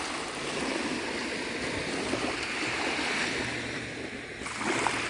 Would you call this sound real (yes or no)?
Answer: yes